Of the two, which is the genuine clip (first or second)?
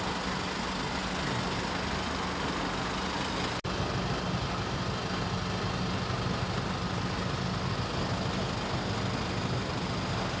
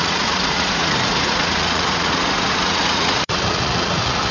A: first